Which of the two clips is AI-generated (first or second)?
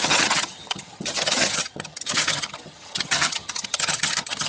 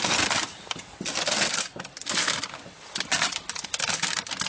first